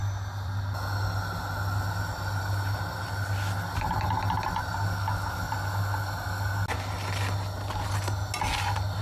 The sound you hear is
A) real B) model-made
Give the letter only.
A